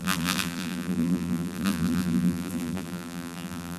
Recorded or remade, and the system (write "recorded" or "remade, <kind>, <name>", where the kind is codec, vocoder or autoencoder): remade, vocoder, BigVGAN v2